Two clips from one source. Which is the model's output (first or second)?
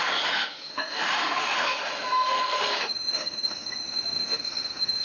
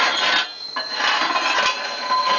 first